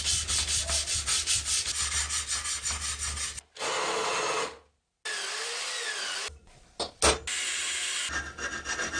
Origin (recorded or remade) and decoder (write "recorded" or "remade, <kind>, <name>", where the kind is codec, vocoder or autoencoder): recorded